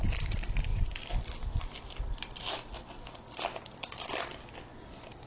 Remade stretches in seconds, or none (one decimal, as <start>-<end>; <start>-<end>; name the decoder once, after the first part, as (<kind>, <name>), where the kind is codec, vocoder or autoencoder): none